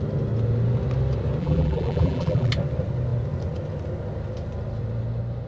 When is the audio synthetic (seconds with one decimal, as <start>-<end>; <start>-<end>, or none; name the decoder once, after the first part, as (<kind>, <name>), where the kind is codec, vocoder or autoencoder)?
1.4-2.5 (vocoder, BigVGAN v2)